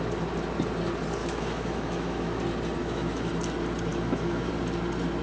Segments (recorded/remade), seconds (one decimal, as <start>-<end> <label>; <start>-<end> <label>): 0.0-1.2 recorded; 1.2-2.4 remade; 2.4-2.8 recorded; 2.8-3.3 remade; 3.3-3.9 recorded; 3.9-4.5 remade; 4.5-5.2 recorded